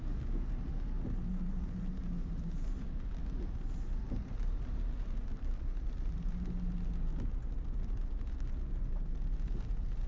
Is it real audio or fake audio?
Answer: real